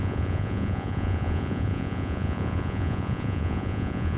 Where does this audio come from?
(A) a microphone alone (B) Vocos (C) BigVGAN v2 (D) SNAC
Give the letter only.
B